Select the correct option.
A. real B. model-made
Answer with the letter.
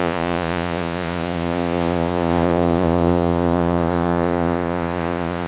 B